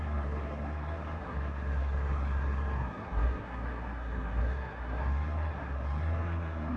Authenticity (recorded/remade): remade